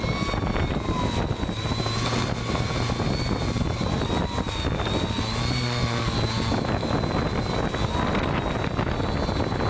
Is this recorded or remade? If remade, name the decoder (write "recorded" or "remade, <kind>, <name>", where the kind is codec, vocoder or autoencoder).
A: recorded